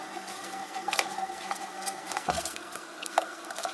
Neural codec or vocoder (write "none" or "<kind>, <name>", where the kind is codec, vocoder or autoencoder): codec, SNAC